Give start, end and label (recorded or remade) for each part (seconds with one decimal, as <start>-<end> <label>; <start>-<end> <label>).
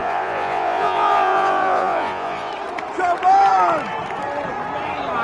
0.0-2.5 remade; 2.5-5.2 recorded